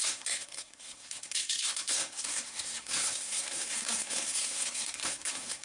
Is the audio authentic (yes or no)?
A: no